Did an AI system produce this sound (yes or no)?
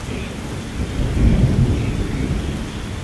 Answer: no